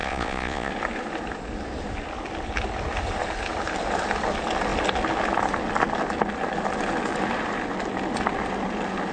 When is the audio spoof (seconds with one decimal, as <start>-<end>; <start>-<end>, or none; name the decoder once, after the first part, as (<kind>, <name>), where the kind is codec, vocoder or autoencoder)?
0.0-0.7 (vocoder, Vocos)